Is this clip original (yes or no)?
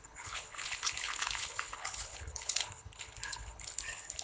no